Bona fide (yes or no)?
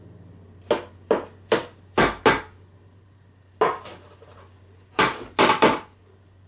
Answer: yes